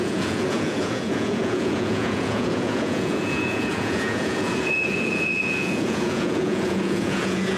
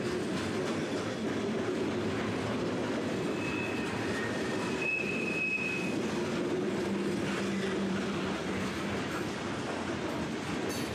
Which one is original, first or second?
second